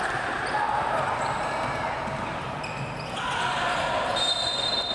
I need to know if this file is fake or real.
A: real